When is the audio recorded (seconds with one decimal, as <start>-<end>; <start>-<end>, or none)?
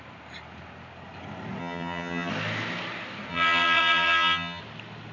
0.0-1.6; 2.3-3.3; 4.6-5.1